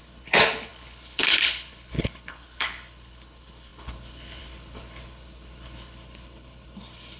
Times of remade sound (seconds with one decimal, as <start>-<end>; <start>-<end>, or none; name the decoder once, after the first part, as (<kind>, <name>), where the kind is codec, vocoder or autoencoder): 0.0-7.2 (codec, HILCodec)